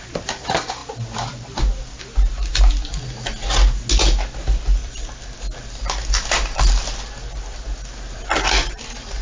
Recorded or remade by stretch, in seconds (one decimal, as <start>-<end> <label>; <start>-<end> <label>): 0.0-4.8 recorded; 4.8-5.4 remade; 5.4-9.2 recorded